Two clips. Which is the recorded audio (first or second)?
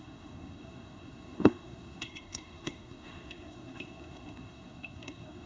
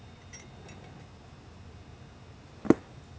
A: second